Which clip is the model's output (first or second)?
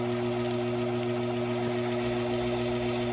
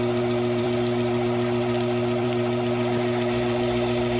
second